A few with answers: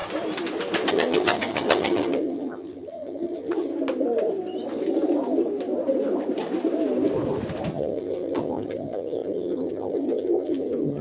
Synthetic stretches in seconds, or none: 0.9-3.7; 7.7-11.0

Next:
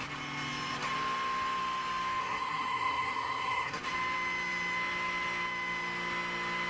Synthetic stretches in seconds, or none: 2.2-3.8

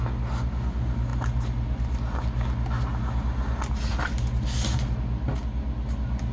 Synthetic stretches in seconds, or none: none

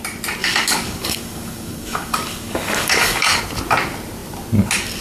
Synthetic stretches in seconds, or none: 0.4-3.4

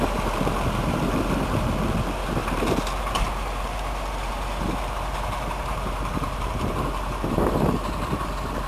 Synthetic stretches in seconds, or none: 0.0-8.7